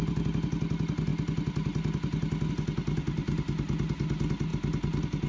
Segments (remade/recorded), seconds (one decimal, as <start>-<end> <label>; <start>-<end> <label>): 0.0-5.3 recorded